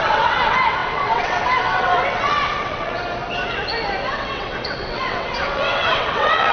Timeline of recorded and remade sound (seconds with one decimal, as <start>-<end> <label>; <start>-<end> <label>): 0.0-3.0 remade; 3.0-4.1 recorded; 4.1-6.5 remade